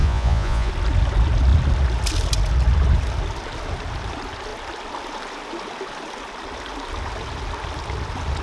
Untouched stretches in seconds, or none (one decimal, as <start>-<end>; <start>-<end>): 0.7-8.4

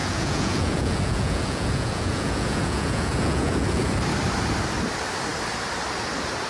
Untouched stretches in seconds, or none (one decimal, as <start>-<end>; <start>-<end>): 3.9-6.5

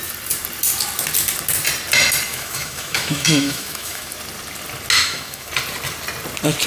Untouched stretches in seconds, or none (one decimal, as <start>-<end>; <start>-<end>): 0.0-2.3; 4.1-5.0; 5.5-6.7